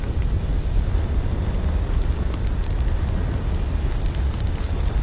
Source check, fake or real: real